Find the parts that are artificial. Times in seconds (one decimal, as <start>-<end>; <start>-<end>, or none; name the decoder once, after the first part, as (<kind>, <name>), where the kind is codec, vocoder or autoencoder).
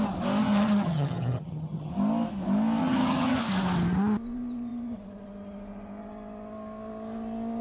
0.4-1.9 (vocoder, HiFi-GAN); 2.8-3.4